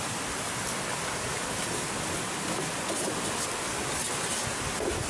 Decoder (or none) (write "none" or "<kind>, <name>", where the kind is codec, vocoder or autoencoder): none